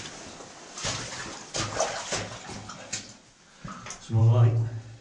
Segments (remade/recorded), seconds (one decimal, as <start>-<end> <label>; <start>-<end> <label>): 0.0-5.0 recorded